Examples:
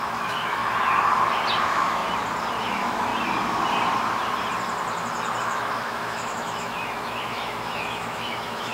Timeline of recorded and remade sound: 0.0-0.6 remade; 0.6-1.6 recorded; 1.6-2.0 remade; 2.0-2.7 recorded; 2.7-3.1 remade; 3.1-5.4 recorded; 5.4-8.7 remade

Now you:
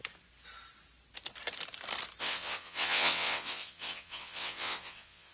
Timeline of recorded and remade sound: 0.0-2.2 recorded; 2.2-5.3 remade

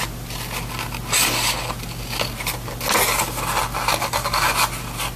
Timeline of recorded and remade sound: 0.0-4.0 recorded; 4.0-4.5 remade; 4.5-5.2 recorded